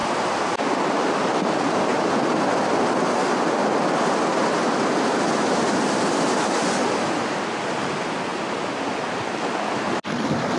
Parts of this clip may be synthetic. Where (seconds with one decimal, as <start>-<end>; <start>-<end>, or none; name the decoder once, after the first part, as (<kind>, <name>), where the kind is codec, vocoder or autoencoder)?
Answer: none